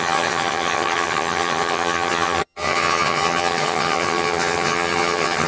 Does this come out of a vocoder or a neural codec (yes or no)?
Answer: yes